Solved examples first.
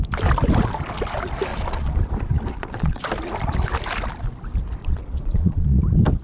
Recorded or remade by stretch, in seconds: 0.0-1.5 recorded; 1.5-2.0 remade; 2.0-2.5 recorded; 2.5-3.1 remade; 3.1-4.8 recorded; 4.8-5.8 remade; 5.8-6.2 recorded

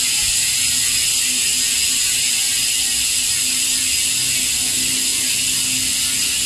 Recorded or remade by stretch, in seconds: 0.0-6.5 recorded

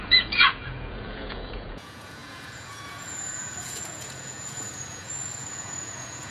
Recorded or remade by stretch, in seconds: 0.0-6.3 remade

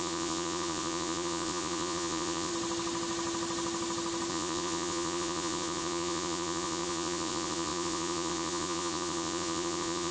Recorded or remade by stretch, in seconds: 0.0-2.5 remade; 2.5-4.3 recorded; 4.3-10.1 remade

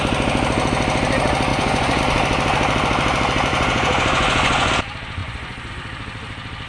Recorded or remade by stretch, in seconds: 0.0-1.5 recorded; 1.5-2.0 remade; 2.0-3.5 recorded; 3.5-4.7 remade; 4.7-5.2 recorded; 5.2-5.7 remade; 5.7-6.7 recorded

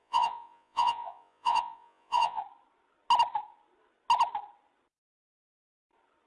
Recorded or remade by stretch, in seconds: 0.0-2.4 remade; 2.4-6.3 recorded

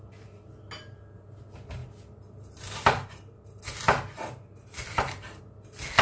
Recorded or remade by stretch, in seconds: 0.0-6.0 recorded